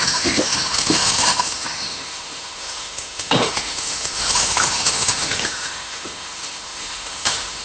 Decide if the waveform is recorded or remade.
remade